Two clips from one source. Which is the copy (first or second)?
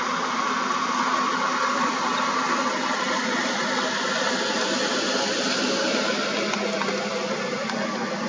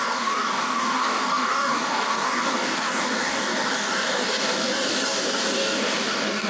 second